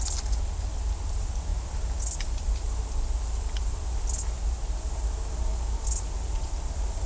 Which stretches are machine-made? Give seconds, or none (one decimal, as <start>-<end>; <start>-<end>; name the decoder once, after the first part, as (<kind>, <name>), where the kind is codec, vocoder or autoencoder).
none